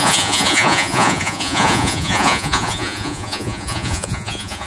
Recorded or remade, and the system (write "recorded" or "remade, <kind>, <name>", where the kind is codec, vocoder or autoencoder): remade, vocoder, Vocos